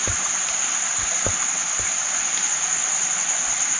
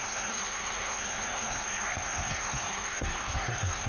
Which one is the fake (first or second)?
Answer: second